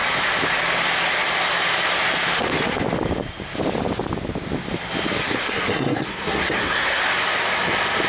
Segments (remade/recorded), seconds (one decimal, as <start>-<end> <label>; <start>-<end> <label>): 0.0-5.2 recorded; 5.2-7.0 remade; 7.0-8.1 recorded